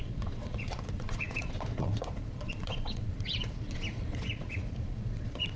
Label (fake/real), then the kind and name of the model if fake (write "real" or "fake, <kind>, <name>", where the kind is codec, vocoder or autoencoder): fake, vocoder, Vocos